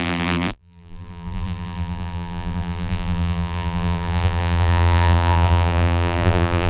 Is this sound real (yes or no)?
no